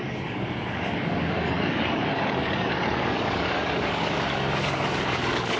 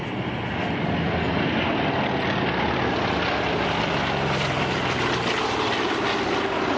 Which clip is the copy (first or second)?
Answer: first